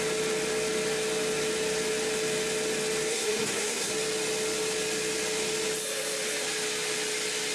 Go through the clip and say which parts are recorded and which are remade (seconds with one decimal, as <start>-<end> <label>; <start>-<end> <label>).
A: 0.0-3.1 recorded; 3.1-3.9 remade; 3.9-7.5 recorded